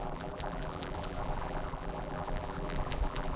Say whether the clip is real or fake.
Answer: fake